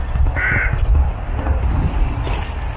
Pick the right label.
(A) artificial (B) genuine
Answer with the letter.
B